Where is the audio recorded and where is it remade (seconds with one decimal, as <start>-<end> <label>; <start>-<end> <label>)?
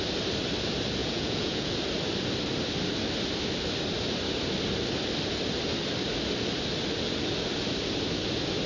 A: 0.0-1.0 recorded; 1.0-1.7 remade; 1.7-8.7 recorded